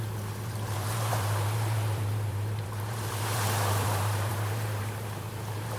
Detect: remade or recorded remade